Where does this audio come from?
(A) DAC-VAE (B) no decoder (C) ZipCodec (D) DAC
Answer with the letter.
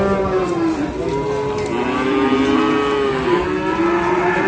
B